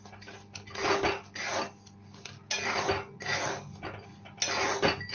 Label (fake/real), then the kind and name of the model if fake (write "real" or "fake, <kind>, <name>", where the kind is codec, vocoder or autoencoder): real